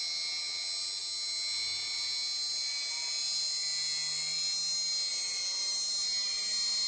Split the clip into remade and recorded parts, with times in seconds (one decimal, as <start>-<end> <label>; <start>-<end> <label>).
0.0-6.9 recorded

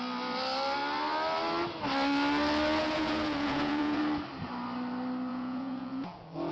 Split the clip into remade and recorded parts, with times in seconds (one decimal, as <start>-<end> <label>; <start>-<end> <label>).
0.0-2.8 recorded; 2.8-4.0 remade; 4.0-5.3 recorded; 5.3-6.5 remade